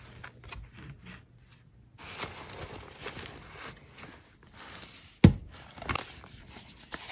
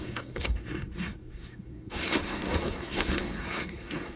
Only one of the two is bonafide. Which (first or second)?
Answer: first